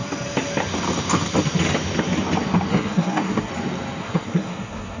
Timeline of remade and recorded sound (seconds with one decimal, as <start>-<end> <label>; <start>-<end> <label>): 0.0-2.7 recorded; 2.7-3.5 remade; 3.5-4.0 recorded; 4.0-5.0 remade